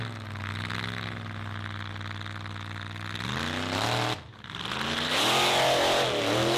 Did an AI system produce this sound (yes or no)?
no